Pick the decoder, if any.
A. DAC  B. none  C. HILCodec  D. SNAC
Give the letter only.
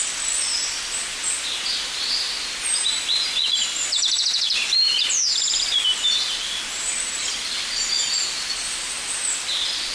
B